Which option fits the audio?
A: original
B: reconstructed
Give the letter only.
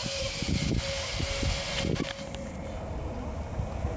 A